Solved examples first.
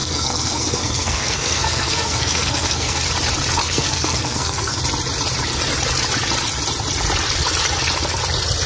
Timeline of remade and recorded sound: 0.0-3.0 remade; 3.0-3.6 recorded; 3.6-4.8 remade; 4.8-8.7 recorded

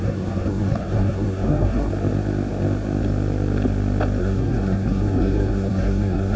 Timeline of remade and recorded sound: 0.0-1.9 remade; 1.9-4.2 recorded; 4.2-6.4 remade